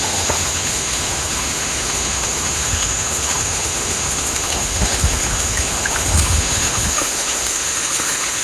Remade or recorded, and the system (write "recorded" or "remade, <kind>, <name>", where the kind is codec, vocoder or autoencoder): remade, autoencoder, DAC-VAE